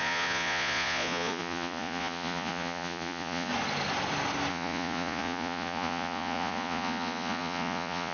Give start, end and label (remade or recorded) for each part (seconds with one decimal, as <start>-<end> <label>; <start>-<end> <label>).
0.0-3.5 remade; 3.5-4.5 recorded; 4.5-8.1 remade